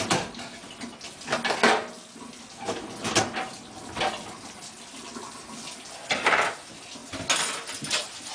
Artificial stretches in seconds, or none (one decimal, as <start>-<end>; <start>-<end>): none